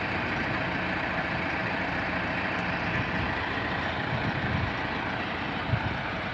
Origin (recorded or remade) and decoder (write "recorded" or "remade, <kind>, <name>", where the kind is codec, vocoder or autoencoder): remade, vocoder, BigVGAN v2